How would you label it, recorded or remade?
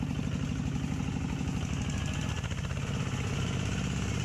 recorded